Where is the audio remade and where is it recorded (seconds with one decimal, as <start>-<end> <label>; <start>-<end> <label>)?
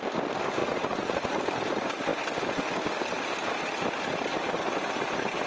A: 0.0-0.6 recorded; 0.6-1.4 remade; 1.4-5.5 recorded